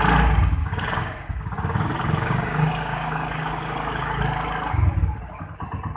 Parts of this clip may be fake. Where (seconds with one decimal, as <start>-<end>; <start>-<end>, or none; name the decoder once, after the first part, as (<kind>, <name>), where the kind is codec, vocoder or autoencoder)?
0.6-4.2 (codec, DAC)